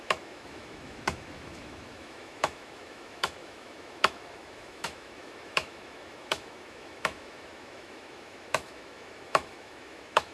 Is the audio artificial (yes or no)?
yes